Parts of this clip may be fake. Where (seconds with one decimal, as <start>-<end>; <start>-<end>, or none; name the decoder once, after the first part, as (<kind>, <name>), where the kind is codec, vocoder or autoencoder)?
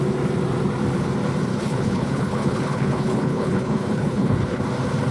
1.5-4.6 (codec, HILCodec)